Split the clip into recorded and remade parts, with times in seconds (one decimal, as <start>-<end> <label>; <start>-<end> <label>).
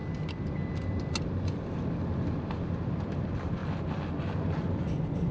0.0-5.3 recorded